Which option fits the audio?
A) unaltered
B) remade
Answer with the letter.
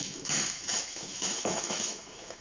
B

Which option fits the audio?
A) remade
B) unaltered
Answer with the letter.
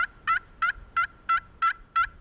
B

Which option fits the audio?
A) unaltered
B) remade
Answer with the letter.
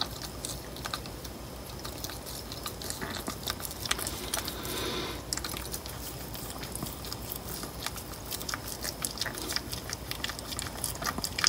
A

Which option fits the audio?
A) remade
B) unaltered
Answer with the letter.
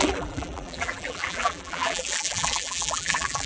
A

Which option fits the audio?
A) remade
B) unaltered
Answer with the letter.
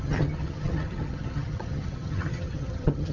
A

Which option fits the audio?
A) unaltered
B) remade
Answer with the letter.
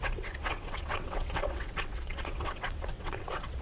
B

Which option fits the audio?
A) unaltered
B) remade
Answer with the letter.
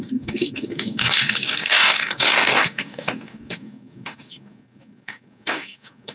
B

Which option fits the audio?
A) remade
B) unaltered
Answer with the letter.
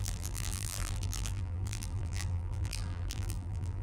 A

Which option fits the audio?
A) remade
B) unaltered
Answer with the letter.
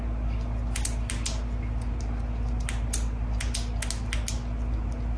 B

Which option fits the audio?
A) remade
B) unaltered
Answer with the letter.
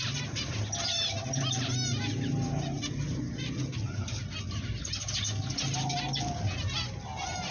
B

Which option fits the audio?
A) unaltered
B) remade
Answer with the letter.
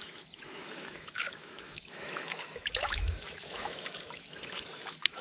B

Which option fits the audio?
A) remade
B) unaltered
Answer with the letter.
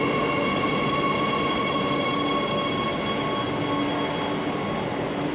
B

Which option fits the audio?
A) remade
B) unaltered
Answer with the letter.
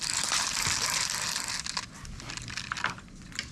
B